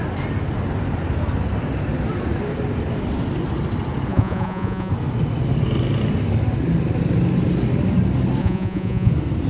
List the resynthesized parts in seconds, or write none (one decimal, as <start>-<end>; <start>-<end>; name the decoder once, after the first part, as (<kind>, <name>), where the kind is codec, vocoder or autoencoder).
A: 4.1-4.9 (vocoder, Vocos); 8.4-9.1